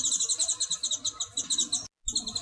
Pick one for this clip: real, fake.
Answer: real